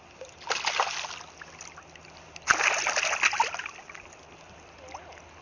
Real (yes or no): yes